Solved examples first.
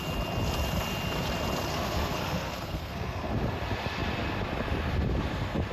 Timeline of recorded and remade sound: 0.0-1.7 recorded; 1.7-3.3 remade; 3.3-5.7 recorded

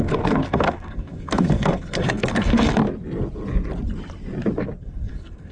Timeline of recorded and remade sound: 0.0-2.8 remade; 2.8-4.8 recorded; 4.8-5.5 remade

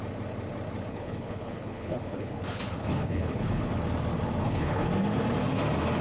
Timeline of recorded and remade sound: 0.0-0.9 recorded; 0.9-3.7 remade; 3.7-4.4 recorded; 4.4-4.9 remade; 4.9-6.0 recorded

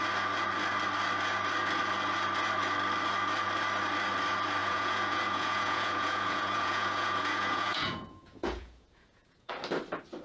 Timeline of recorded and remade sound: 0.0-4.6 recorded; 4.6-9.5 remade; 9.5-10.2 recorded

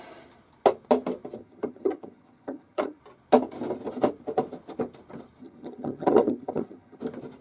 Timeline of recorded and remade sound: 0.0-1.4 recorded; 1.4-3.0 remade; 3.0-5.4 recorded; 5.4-7.0 remade; 7.0-7.4 recorded

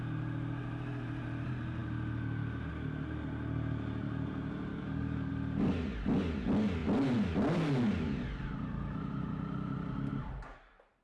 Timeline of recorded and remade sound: 0.0-4.7 recorded; 4.7-5.3 remade; 5.3-11.0 recorded